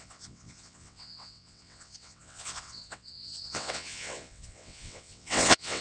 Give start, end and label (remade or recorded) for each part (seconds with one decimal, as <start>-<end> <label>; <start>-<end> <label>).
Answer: 0.0-5.8 remade